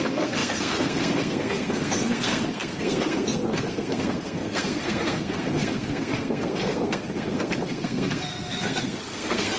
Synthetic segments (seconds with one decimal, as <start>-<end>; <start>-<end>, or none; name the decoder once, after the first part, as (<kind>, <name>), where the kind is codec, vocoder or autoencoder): 0.0-9.6 (codec, SNAC)